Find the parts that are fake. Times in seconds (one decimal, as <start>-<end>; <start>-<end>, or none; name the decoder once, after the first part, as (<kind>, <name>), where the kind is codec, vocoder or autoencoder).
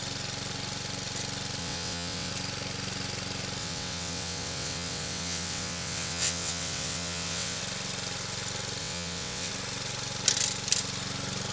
1.6-2.3 (vocoder, WaveNeXt); 3.6-7.6; 8.8-9.5